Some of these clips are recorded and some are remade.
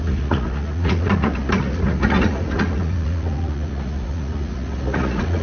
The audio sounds remade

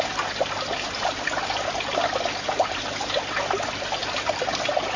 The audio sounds recorded